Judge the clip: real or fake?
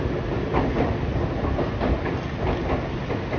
real